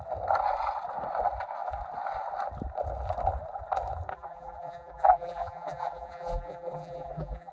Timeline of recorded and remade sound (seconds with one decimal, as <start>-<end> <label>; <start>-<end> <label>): 0.0-4.1 recorded; 4.1-7.5 remade